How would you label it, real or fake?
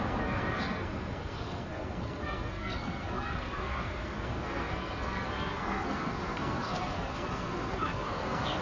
fake